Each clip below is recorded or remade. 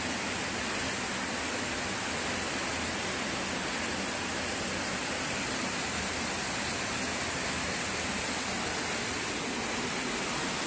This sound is recorded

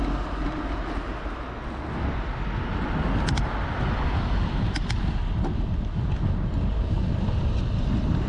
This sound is recorded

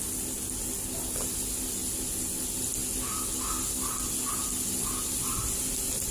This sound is recorded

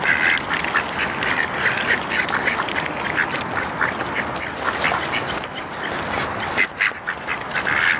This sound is recorded